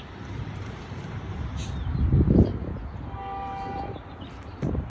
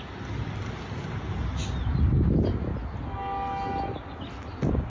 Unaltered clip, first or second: second